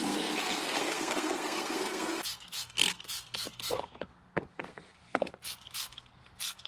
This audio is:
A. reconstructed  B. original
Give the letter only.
A